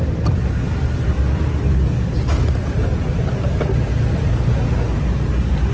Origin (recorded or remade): recorded